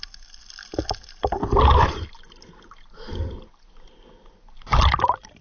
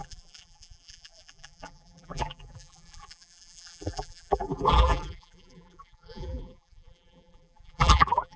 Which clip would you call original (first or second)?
first